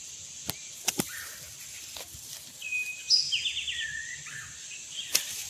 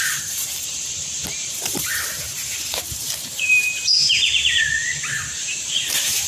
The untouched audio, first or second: first